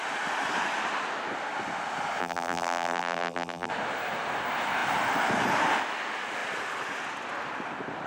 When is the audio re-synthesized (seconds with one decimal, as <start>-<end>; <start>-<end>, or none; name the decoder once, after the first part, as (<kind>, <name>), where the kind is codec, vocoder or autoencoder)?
2.2-3.7 (vocoder, BigVGAN v2)